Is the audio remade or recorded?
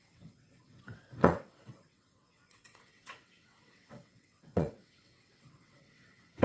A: remade